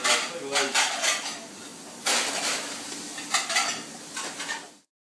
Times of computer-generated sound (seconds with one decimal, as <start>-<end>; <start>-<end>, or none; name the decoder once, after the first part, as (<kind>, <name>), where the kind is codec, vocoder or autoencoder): none